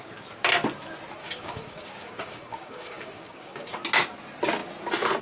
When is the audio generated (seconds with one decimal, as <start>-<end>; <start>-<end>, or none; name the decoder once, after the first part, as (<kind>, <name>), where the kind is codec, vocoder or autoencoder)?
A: 1.2-3.7 (codec, DAC)